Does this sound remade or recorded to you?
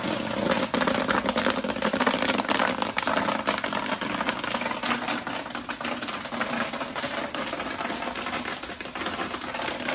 recorded